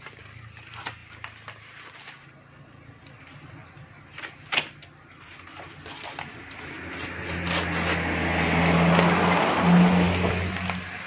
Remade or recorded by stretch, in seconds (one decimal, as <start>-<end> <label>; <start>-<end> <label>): 0.0-11.1 recorded